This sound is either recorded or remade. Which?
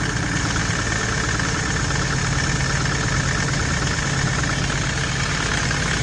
recorded